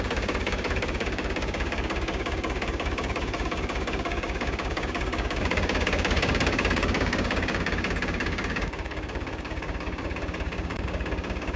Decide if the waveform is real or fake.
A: fake